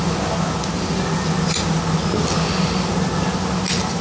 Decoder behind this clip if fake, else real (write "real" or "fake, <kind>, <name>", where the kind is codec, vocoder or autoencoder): real